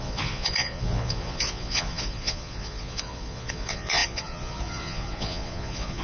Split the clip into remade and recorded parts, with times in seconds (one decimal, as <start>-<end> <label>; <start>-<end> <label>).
0.0-6.0 remade